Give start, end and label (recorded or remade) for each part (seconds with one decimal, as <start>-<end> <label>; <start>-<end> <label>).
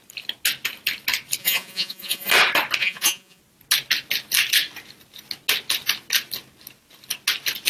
0.0-1.4 recorded; 1.4-2.3 remade; 2.3-2.8 recorded; 2.8-3.4 remade; 3.4-7.7 recorded